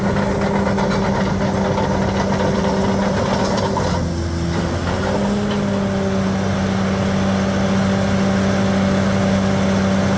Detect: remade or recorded recorded